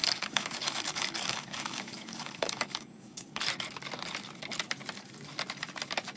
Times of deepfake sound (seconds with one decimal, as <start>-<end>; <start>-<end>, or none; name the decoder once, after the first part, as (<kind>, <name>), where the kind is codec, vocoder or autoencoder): 0.0-3.4 (codec, DAC)